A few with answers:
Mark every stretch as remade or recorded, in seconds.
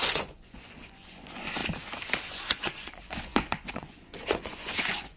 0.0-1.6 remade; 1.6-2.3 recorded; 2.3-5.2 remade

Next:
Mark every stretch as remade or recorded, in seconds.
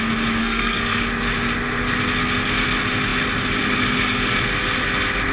0.0-0.4 recorded; 0.4-1.0 remade; 1.0-5.3 recorded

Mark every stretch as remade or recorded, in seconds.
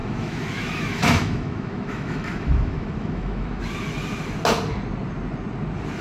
0.0-3.6 remade; 3.6-6.0 recorded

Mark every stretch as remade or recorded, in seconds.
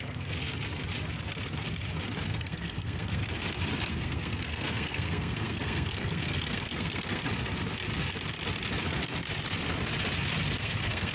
0.0-0.4 remade; 0.4-2.3 recorded; 2.3-3.2 remade; 3.2-3.9 recorded; 3.9-7.2 remade; 7.2-10.6 recorded; 10.6-11.1 remade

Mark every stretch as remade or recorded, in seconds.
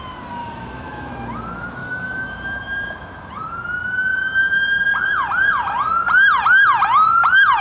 0.0-0.4 recorded; 0.4-1.1 remade; 1.1-1.8 recorded; 1.8-3.3 remade; 3.3-7.6 recorded